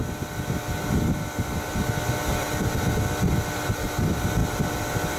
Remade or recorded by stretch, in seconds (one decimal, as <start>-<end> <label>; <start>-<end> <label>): 0.0-5.2 recorded